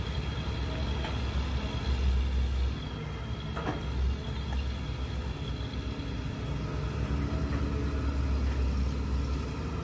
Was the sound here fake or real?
real